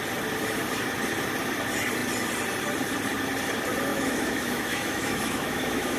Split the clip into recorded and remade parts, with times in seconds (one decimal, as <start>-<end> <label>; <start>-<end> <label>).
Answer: 0.0-3.9 recorded; 3.9-6.0 remade